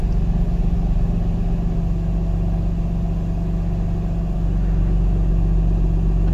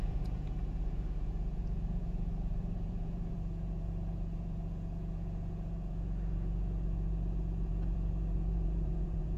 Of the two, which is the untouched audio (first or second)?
first